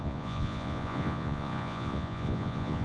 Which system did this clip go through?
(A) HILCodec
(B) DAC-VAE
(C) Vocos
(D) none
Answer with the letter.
C